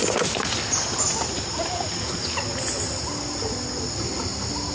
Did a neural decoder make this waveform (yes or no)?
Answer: no